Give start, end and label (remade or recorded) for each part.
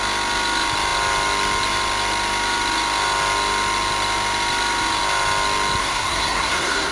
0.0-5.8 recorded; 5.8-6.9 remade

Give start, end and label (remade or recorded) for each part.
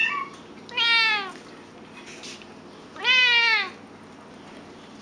0.0-5.0 recorded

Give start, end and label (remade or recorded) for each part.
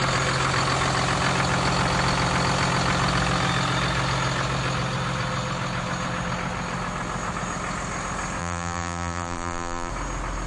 0.0-8.4 recorded; 8.4-9.9 remade; 9.9-10.5 recorded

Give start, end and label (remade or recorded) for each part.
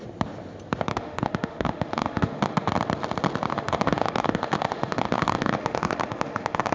0.0-0.9 recorded; 0.9-2.7 remade; 2.7-3.5 recorded; 3.5-6.7 remade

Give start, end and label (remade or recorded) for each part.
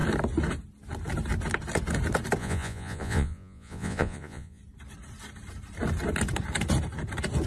0.0-2.4 recorded; 2.4-4.6 remade; 4.6-7.5 recorded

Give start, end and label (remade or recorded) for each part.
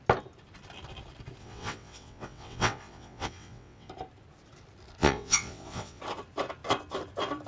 0.0-1.4 recorded; 1.4-3.9 remade; 3.9-5.0 recorded; 5.0-6.0 remade; 6.0-7.5 recorded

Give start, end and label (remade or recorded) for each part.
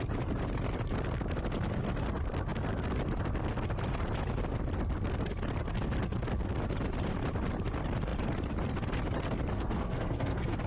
0.0-9.5 recorded; 9.5-10.7 remade